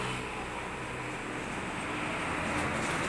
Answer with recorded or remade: recorded